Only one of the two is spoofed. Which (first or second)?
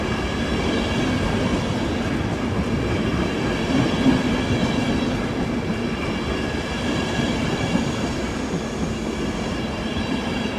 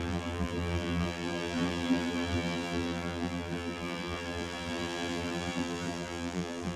second